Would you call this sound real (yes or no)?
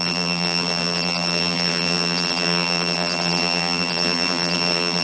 no